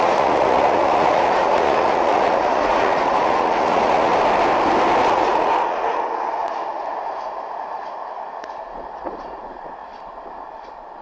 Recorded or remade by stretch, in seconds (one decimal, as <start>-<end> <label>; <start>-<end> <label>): 0.0-4.1 remade; 4.1-5.1 recorded; 5.1-9.8 remade; 9.8-11.0 recorded